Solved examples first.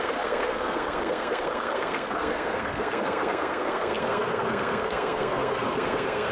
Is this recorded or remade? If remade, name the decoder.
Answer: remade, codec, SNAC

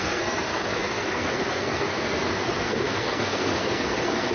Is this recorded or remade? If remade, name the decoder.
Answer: remade, codec, SNAC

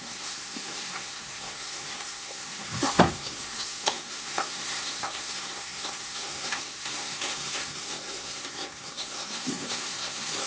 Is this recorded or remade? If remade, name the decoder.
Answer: remade, codec, SNAC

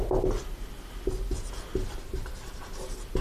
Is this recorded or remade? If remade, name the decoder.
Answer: recorded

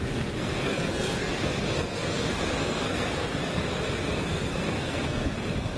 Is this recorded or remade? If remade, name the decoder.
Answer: remade, codec, SNAC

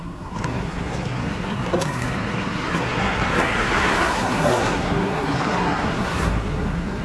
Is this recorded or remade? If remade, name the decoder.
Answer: remade, codec, SNAC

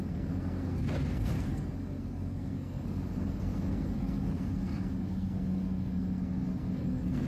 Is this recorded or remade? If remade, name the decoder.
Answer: remade, codec, SNAC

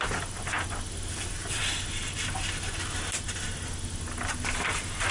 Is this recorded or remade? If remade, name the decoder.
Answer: recorded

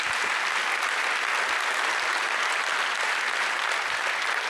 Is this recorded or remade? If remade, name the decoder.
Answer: recorded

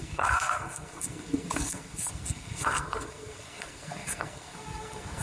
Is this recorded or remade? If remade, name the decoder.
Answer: remade, codec, SNAC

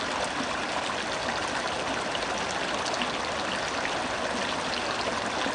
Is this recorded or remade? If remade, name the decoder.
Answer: recorded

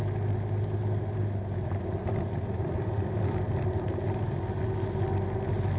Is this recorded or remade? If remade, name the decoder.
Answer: recorded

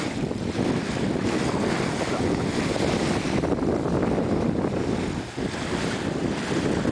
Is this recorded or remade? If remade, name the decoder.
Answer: recorded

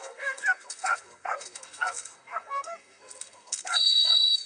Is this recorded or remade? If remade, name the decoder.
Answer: remade, codec, SNAC